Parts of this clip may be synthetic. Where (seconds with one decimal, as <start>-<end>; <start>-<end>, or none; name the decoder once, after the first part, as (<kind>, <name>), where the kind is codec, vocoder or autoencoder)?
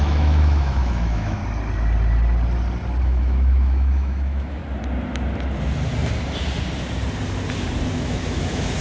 0.0-1.4 (autoencoder, DAC-VAE); 3.0-4.6; 7.9-8.8